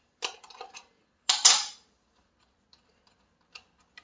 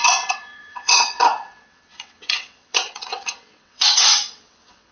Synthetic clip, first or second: second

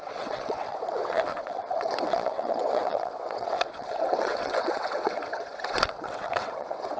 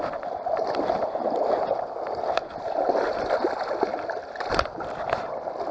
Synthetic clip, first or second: first